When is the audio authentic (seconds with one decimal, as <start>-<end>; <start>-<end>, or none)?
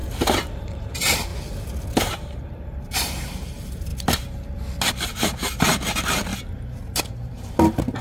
0.0-0.6; 1.3-2.0; 3.9-4.9; 6.3-7.0